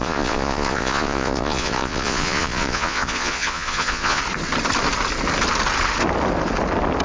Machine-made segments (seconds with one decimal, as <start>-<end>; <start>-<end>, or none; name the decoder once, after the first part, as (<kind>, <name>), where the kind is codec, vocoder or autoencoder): 0.0-4.2 (vocoder, Vocos)